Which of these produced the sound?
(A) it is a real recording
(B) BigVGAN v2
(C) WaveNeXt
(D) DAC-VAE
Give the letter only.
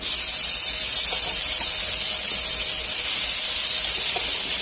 A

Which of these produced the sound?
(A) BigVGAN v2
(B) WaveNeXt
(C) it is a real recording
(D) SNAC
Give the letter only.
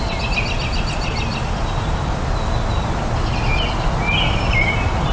C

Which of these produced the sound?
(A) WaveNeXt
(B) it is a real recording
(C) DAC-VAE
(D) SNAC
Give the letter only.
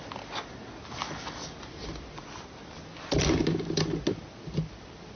B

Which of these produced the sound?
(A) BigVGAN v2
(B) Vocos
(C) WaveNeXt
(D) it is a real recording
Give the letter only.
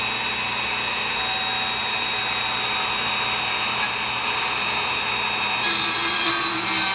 D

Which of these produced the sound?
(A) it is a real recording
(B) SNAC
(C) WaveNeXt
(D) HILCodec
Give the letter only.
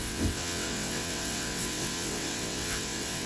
C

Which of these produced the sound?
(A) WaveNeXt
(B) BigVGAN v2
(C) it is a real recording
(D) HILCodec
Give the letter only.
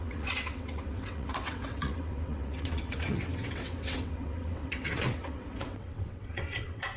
A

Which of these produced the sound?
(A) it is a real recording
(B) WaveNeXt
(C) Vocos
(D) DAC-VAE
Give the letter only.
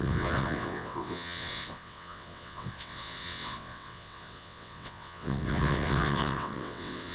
B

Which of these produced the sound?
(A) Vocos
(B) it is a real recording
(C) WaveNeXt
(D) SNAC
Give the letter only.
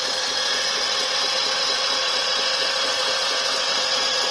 C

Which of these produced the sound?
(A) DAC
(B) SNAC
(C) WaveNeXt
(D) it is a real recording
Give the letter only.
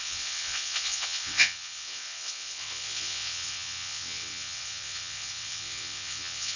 C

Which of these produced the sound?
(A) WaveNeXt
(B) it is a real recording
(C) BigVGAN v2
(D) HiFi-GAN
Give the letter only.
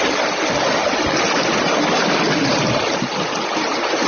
B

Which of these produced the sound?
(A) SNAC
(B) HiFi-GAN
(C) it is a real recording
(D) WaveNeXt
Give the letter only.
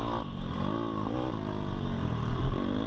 C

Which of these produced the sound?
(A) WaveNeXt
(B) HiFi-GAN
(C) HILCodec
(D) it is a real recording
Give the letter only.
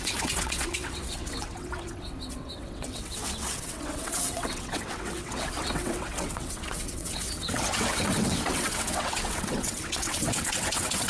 A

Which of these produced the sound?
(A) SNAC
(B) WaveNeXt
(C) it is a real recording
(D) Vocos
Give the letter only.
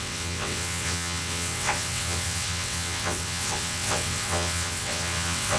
B